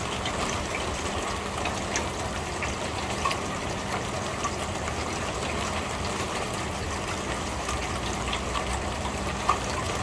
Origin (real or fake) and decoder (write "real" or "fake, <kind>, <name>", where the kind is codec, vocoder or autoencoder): real